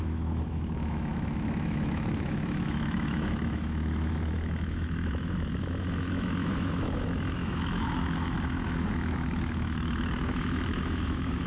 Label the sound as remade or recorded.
remade